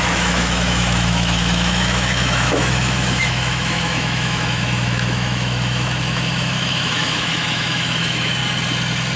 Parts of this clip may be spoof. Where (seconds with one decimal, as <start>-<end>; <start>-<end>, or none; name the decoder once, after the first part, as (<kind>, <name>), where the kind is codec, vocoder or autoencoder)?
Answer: 0.0-8.4 (autoencoder, DAC-VAE)